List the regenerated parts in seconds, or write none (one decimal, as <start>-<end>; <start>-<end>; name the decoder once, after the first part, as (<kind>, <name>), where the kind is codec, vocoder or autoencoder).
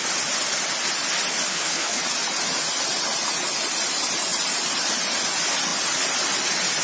1.5-2.0 (codec, HILCodec)